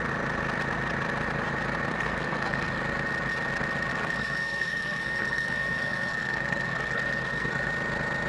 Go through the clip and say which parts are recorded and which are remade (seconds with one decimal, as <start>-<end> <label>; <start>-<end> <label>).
0.0-1.9 recorded; 1.9-2.8 remade; 2.8-3.9 recorded; 3.9-7.7 remade; 7.7-8.3 recorded